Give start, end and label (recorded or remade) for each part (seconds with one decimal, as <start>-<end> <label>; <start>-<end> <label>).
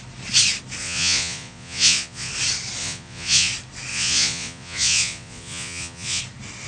0.0-0.8 recorded; 0.8-2.3 remade; 2.3-2.8 recorded; 2.8-3.5 remade; 3.5-3.9 recorded; 3.9-6.2 remade; 6.2-6.7 recorded